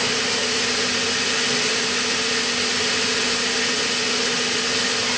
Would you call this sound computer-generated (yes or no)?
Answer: no